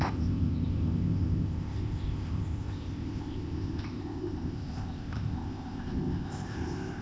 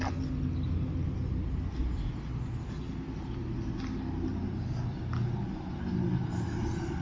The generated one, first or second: first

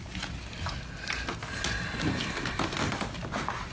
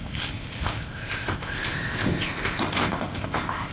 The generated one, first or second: second